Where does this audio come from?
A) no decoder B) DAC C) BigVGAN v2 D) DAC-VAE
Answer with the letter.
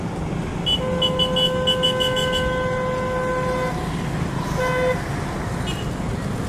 A